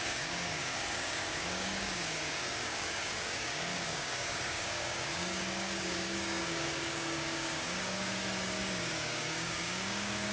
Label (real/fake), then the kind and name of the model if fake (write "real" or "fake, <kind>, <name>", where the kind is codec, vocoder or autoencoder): fake, codec, DAC